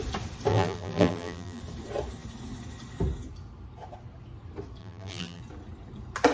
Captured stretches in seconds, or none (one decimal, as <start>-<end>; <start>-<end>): 0.0-0.5; 1.6-4.8; 5.4-6.3